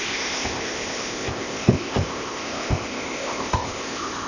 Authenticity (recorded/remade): remade